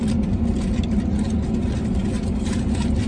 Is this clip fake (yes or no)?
no